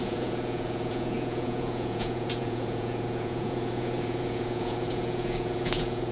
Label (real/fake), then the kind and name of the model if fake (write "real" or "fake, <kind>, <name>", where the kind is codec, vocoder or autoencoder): fake, vocoder, Vocos